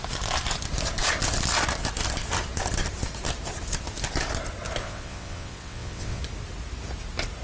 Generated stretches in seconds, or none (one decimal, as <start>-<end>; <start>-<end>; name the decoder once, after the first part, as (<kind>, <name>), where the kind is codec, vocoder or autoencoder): 4.8-6.2 (vocoder, WaveNeXt)